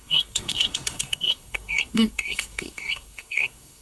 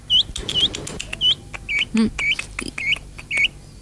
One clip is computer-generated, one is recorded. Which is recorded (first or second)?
second